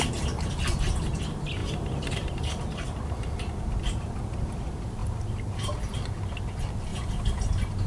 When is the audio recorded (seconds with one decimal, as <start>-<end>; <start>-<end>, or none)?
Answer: 0.0-1.6; 2.6-5.0; 5.8-6.9; 7.5-7.9